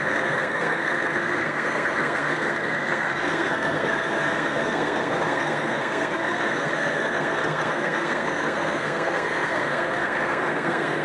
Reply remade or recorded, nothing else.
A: remade